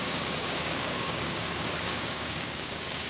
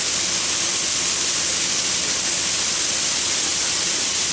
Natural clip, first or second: second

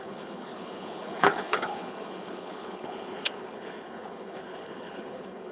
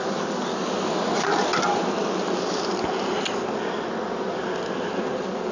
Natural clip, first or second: second